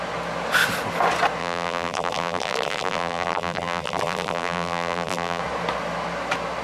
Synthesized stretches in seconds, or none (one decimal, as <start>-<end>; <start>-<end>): 1.4-5.4